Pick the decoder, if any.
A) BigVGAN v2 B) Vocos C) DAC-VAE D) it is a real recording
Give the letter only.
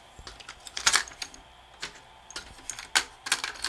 D